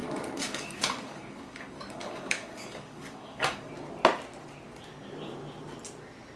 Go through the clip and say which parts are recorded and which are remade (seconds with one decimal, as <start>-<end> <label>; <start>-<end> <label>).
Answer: 0.0-3.7 remade; 3.7-6.4 recorded